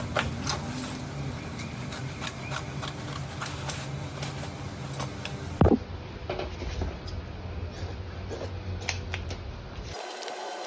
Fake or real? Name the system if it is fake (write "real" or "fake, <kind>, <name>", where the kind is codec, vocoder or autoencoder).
real